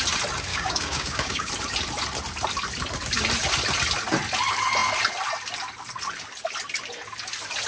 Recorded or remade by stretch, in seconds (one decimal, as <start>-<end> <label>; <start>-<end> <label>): 0.0-0.5 recorded; 0.5-1.5 remade; 1.5-7.7 recorded